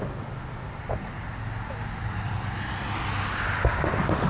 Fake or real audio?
real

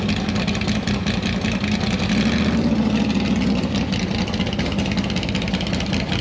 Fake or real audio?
real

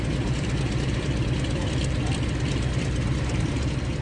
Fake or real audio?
fake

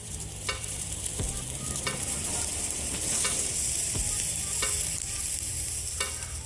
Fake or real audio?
fake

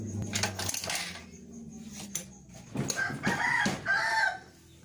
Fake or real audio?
real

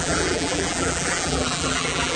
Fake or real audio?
fake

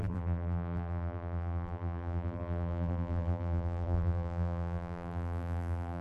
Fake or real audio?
fake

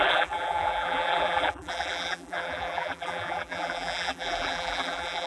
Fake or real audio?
fake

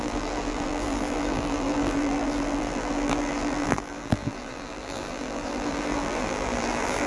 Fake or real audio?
fake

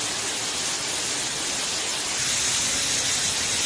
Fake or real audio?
real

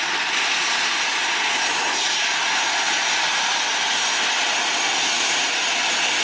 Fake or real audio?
real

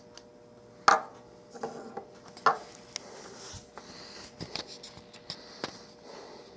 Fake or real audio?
real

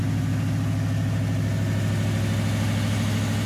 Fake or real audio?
real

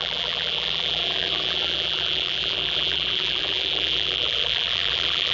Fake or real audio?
fake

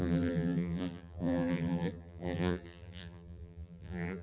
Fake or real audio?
fake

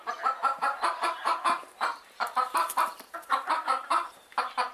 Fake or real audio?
fake